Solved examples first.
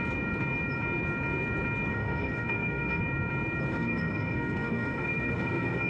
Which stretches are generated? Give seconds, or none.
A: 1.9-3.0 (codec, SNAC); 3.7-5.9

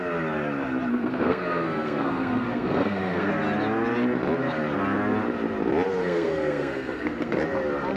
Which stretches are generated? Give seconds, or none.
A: 0.9-3.3 (codec, SNAC); 6.0-7.4

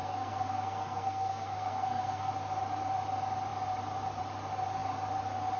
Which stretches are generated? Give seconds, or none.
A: 0.0-2.3 (codec, SNAC)

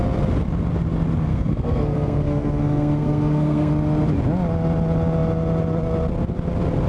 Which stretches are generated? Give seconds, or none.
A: 1.3-3.7 (codec, SNAC)

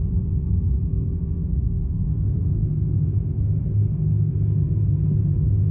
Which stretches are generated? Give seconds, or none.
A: 0.9-4.3 (codec, SNAC)